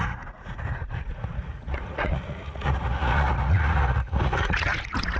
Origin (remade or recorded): remade